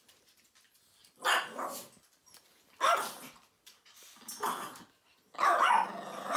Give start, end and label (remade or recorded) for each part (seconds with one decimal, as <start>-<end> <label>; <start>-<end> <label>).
0.0-1.0 recorded; 1.0-4.8 remade; 4.8-6.4 recorded

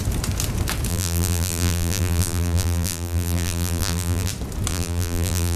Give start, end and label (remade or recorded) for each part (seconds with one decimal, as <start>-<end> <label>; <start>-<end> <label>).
0.0-0.9 recorded; 0.9-4.3 remade; 4.3-4.7 recorded; 4.7-5.6 remade

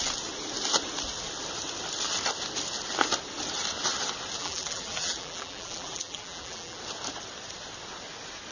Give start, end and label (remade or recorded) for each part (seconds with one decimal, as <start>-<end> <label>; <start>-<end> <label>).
0.0-4.4 recorded; 4.4-6.8 remade; 6.8-8.5 recorded

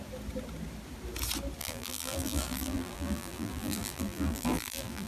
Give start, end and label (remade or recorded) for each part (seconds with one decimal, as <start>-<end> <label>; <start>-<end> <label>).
0.0-1.6 recorded; 1.6-5.1 remade

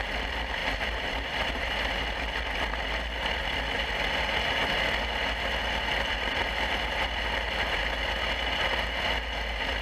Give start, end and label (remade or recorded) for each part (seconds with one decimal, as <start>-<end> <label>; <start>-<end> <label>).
0.0-0.6 recorded; 0.6-1.9 remade; 1.9-9.8 recorded

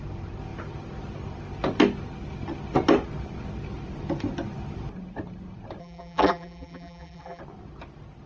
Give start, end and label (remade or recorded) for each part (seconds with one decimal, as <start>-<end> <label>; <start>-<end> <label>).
0.0-5.8 recorded; 5.8-7.4 remade; 7.4-8.3 recorded

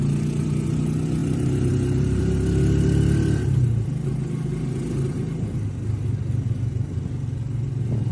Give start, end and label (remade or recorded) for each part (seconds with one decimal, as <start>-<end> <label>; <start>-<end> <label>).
0.0-1.2 recorded; 1.2-2.2 remade; 2.2-8.1 recorded

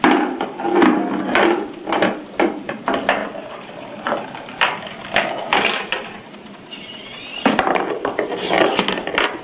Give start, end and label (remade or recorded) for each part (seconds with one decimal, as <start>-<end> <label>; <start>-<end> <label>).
0.0-3.2 recorded; 3.2-3.7 remade; 3.7-9.4 recorded